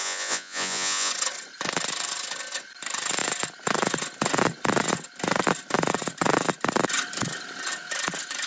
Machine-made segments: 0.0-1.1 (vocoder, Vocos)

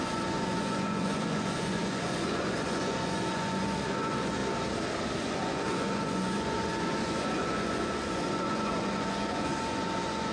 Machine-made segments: 0.0-4.4 (vocoder, Vocos); 5.2-10.3

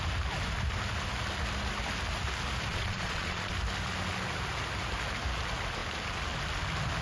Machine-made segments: 2.7-3.5 (vocoder, Vocos)

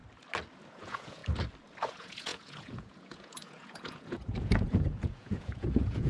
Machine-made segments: 0.7-1.2 (vocoder, Vocos); 1.9-6.1

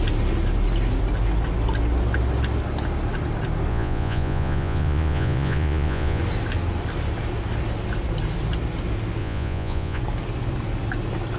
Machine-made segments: 3.7-6.2 (vocoder, Vocos); 9.2-10.0

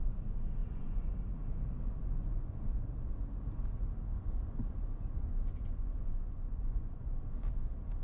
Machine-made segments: 0.6-1.1 (vocoder, Vocos); 2.0-2.6; 4.1-7.2

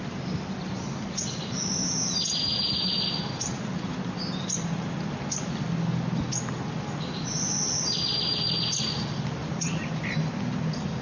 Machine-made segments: 9.4-9.9 (vocoder, Vocos)